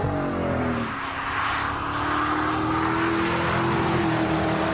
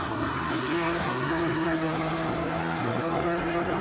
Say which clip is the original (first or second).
first